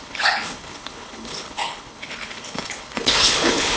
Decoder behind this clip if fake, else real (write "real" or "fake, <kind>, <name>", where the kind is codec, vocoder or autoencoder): fake, codec, HILCodec